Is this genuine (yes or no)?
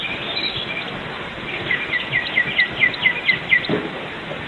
yes